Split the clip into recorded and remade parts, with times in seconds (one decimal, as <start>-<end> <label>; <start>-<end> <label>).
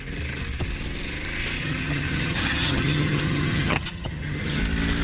0.0-1.6 recorded; 1.6-4.6 remade; 4.6-5.0 recorded